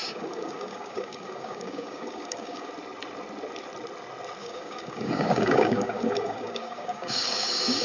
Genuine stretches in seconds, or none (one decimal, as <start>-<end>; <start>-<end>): 2.7-4.4